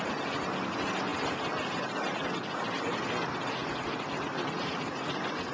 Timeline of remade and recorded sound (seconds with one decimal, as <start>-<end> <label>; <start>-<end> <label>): 0.0-3.6 recorded; 3.6-5.5 remade